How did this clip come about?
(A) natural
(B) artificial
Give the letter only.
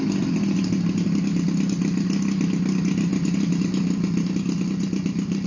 A